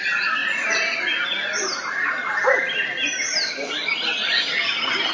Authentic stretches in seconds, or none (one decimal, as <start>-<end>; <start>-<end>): 0.0-5.1